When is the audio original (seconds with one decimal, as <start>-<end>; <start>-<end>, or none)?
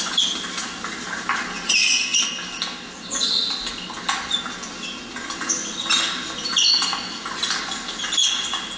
0.0-8.8